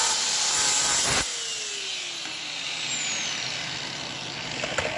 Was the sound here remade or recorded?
recorded